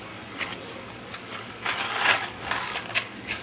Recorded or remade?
remade